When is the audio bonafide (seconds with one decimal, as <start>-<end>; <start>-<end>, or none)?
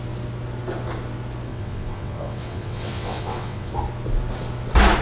0.0-1.5; 3.7-5.0